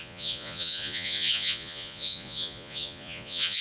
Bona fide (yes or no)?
no